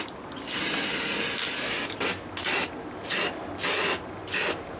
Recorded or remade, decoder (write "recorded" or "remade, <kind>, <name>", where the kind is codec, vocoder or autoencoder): recorded